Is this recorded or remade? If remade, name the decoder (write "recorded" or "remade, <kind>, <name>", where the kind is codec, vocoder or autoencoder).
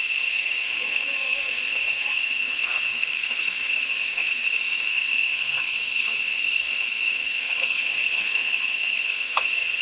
remade, codec, SNAC